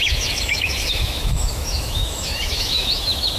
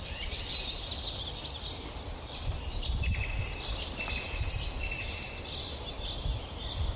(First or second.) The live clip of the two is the second